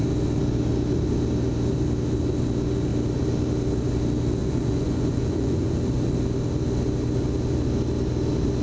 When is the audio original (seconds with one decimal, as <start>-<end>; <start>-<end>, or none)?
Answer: 0.0-4.4; 5.8-8.6